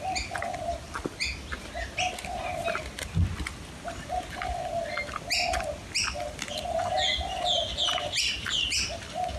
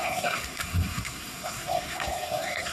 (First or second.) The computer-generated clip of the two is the second